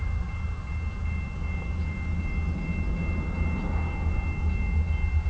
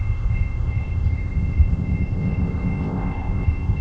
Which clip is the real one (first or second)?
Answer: first